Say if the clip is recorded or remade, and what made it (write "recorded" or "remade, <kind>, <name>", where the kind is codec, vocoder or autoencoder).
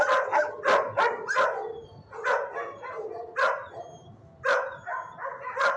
recorded